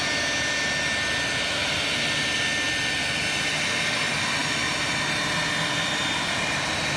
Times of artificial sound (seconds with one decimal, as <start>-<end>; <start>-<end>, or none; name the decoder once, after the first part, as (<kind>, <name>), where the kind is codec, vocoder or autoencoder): none